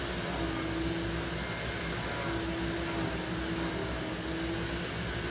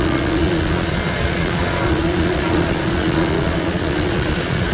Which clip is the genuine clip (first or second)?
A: first